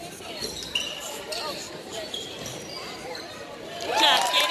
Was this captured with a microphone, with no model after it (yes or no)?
yes